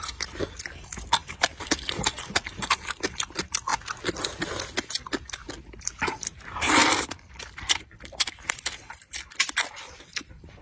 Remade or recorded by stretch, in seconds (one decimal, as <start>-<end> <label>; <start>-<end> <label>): 0.0-3.7 remade; 3.7-5.8 recorded; 5.8-10.6 remade